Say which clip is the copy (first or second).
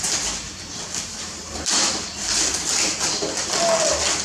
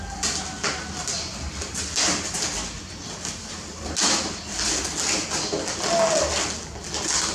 first